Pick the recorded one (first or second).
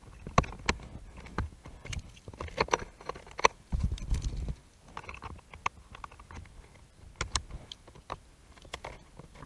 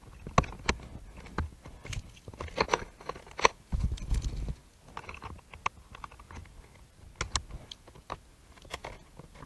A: second